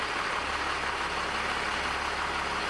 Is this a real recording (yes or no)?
yes